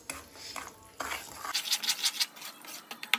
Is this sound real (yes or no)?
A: yes